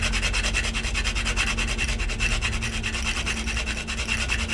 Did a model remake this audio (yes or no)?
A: no